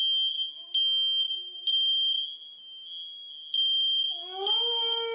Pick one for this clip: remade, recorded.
recorded